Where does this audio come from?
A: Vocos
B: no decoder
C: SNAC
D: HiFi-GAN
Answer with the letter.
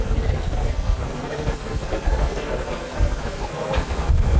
C